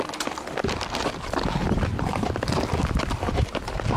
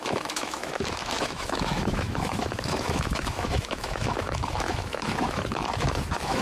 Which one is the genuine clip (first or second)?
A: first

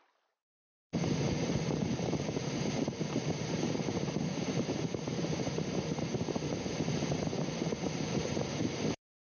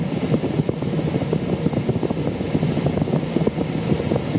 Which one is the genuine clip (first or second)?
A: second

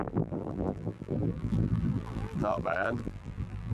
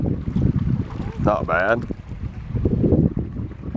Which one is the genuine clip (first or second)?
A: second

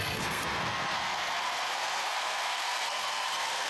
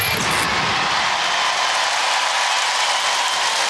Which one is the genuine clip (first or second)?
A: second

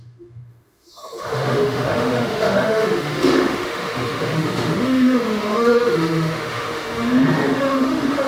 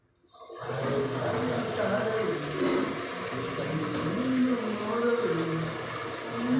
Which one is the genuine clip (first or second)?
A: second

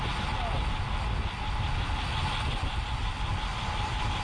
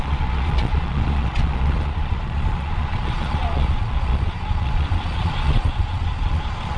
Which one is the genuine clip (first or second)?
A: first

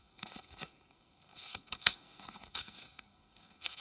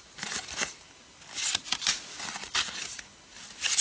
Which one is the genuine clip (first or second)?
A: second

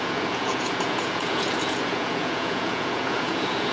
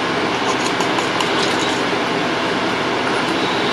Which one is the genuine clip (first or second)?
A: second